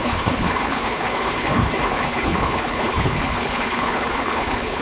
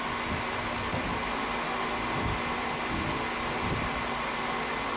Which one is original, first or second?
second